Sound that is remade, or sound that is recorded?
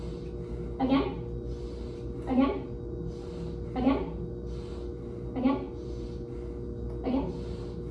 recorded